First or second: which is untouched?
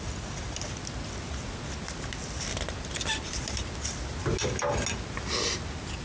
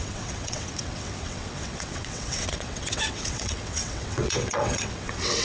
first